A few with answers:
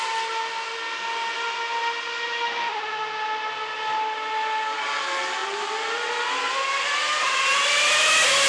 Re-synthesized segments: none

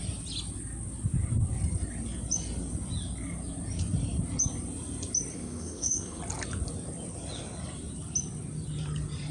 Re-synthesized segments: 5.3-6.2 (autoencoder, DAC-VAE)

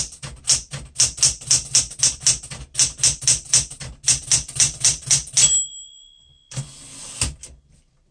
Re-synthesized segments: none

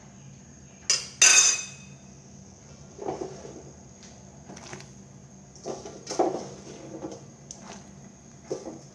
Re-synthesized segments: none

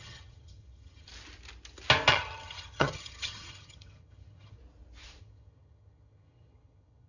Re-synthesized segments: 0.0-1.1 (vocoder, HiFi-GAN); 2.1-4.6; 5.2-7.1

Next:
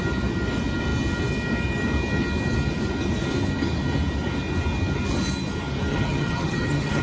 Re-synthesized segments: 5.9-7.0 (vocoder, HiFi-GAN)